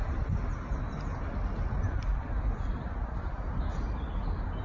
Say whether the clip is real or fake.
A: real